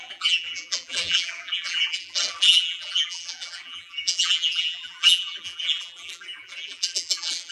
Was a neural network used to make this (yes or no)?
yes